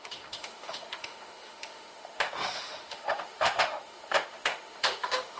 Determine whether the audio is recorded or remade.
remade